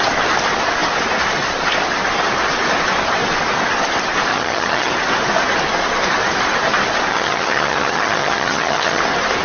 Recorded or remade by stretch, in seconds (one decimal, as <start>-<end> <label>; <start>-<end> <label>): 0.0-4.3 recorded; 4.3-4.9 remade; 4.9-7.1 recorded; 7.1-9.0 remade; 9.0-9.4 recorded